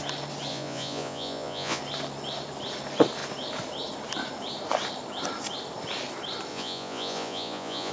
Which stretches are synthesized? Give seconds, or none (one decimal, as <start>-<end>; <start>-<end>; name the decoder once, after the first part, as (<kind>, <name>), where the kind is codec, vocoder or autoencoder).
0.5-1.8 (vocoder, Vocos); 6.5-7.9

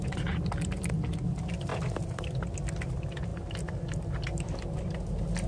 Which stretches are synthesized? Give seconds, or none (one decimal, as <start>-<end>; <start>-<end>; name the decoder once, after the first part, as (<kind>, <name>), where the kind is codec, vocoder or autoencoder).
none

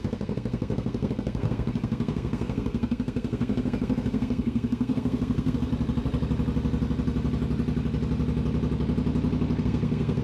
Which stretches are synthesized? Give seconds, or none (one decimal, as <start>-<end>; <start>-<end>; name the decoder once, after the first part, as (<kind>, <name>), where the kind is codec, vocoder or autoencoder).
0.0-5.7 (codec, SNAC); 9.6-10.2

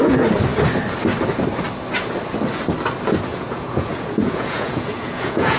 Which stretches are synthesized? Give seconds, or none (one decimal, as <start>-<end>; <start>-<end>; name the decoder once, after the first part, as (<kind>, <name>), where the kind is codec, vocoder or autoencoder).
3.3-5.6 (vocoder, Vocos)

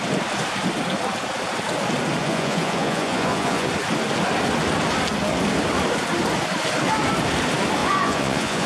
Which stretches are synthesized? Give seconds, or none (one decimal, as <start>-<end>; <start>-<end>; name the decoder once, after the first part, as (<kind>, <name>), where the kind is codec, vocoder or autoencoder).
2.2-3.7 (vocoder, Vocos); 7.8-8.7

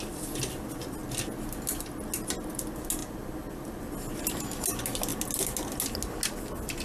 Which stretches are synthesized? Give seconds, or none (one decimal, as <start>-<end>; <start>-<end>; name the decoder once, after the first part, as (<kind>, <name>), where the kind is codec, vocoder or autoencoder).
3.0-3.9 (vocoder, BigVGAN v2)